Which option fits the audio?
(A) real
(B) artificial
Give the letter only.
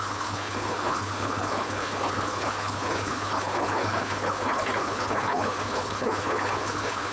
B